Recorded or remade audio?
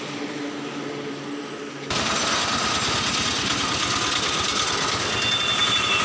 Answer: recorded